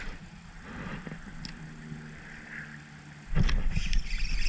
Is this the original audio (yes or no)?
yes